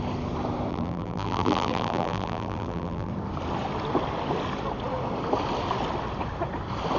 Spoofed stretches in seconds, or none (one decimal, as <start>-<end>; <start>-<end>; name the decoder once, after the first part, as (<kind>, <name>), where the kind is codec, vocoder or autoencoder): 0.7-3.1 (vocoder, BigVGAN v2)